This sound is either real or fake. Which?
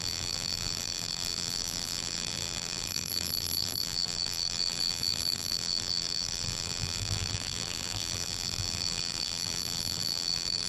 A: fake